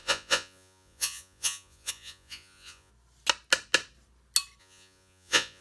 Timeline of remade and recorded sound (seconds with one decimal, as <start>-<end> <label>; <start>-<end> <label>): 0.0-2.9 remade; 2.9-4.6 recorded; 4.6-5.6 remade